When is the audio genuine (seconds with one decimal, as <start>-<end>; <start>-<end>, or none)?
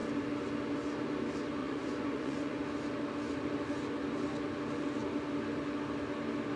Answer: 0.0-1.6; 2.6-6.6